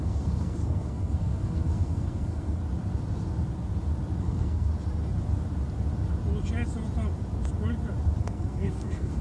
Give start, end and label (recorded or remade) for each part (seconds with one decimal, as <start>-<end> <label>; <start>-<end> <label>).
0.0-2.6 remade; 2.6-4.2 recorded; 4.2-4.7 remade; 4.7-8.2 recorded; 8.2-9.2 remade